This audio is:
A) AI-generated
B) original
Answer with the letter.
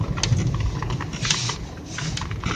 B